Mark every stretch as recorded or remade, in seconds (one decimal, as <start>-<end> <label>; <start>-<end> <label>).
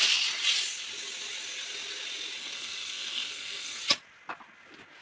0.0-2.4 recorded; 2.4-3.8 remade; 3.8-5.0 recorded